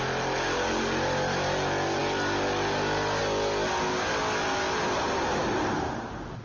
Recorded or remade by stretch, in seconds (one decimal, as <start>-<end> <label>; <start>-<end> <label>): 0.0-6.4 recorded